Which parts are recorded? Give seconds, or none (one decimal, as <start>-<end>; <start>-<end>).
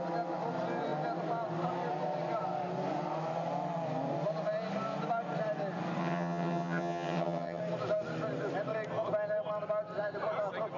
0.0-6.0; 7.6-10.8